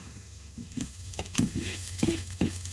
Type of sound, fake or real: fake